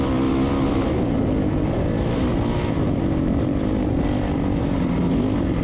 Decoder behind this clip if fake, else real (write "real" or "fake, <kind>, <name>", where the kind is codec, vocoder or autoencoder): real